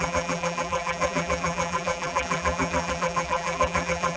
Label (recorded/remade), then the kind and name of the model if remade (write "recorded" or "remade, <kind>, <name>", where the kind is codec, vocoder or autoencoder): remade, vocoder, BigVGAN v2